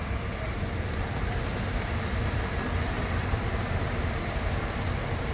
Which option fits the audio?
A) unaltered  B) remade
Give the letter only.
B